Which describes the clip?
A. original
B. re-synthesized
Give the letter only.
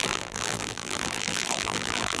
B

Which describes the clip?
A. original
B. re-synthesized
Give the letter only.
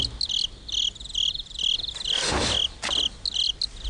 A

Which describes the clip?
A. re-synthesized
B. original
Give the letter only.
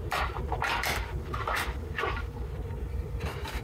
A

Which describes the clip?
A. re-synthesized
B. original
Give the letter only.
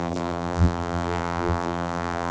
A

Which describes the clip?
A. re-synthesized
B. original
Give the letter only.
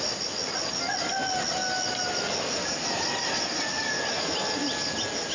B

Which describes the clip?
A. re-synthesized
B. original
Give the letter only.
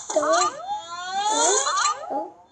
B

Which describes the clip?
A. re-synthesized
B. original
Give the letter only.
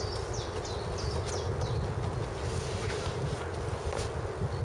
B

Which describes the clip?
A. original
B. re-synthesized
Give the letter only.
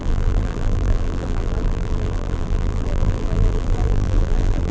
B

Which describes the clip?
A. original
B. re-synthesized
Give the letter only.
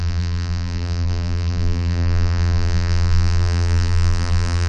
B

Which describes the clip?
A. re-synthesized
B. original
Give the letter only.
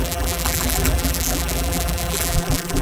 A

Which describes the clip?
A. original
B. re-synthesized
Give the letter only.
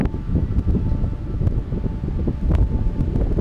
A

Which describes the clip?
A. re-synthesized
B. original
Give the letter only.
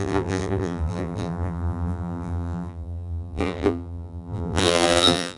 A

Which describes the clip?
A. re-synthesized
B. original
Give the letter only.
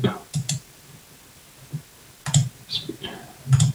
B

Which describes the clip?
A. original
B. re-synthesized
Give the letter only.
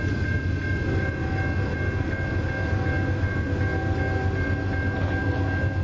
A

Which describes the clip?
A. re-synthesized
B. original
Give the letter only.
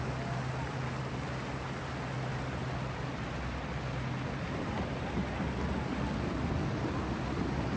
B